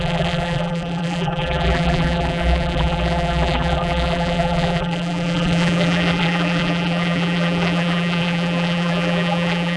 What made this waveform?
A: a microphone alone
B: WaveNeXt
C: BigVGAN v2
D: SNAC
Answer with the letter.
C